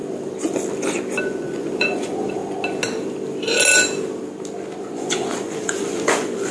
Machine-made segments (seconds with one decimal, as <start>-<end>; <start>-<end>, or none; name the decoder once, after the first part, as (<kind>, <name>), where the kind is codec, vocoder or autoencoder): 1.2-2.4 (vocoder, Vocos); 4.8-6.5